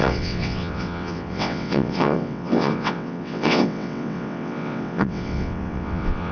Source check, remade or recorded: remade